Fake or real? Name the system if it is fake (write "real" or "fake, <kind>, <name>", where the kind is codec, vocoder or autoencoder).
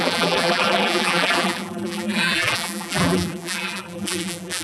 fake, vocoder, BigVGAN v2